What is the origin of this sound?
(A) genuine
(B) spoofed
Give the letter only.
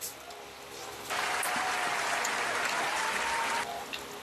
A